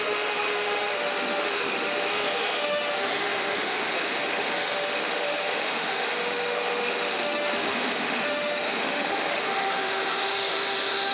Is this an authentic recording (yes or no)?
no